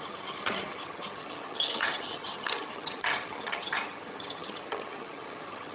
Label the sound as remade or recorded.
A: remade